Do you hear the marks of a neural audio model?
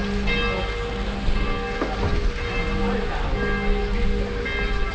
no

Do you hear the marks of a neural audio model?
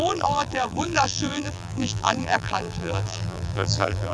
yes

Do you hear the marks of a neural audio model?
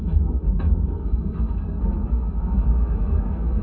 yes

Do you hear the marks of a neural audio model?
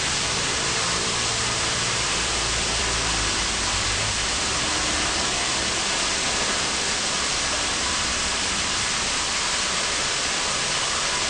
yes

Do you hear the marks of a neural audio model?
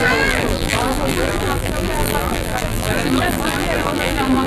yes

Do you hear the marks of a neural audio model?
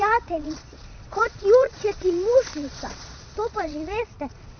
yes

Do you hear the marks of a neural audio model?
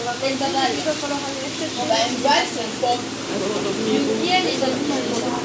no